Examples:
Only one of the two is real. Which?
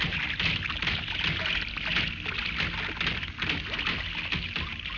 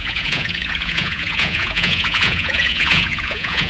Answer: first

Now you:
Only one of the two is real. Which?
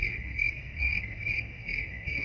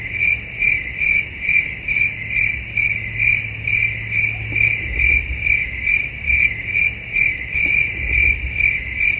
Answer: second